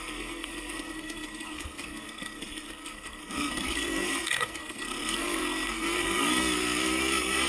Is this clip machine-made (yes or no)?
yes